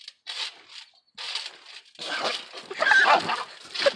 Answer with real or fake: real